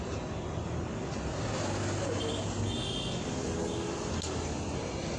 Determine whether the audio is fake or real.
real